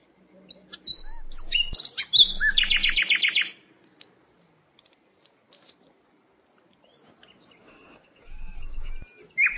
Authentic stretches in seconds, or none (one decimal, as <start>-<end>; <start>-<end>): 0.0-7.6; 8.9-9.6